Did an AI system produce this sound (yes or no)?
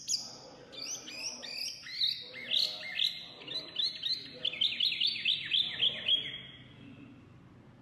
no